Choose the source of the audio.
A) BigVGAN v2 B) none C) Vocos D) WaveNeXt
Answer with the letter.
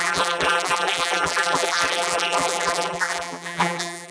A